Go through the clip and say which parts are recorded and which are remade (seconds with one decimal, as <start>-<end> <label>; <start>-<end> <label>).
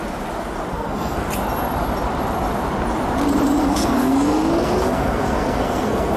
0.0-0.7 recorded; 0.7-1.3 remade; 1.3-3.6 recorded; 3.6-6.2 remade